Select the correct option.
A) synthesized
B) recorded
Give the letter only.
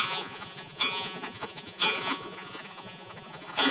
A